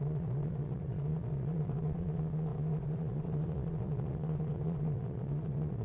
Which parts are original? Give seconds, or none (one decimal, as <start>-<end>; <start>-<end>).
none